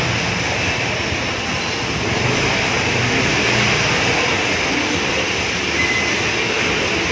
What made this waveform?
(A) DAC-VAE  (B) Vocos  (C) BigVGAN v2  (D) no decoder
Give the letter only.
D